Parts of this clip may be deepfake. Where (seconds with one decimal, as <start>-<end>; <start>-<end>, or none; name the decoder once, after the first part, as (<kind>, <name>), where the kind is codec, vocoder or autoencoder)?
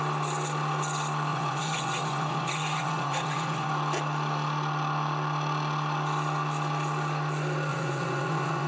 1.3-3.7 (vocoder, Vocos); 7.7-8.7